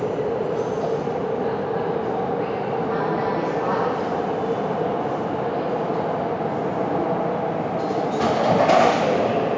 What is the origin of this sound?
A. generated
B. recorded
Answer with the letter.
B